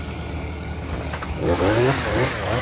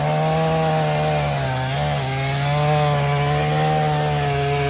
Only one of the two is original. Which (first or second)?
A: second